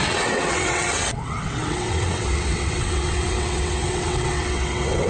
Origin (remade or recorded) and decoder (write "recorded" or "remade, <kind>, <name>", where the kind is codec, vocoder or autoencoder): remade, vocoder, WaveNeXt